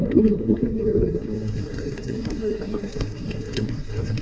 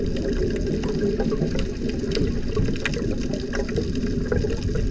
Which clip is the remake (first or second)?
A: first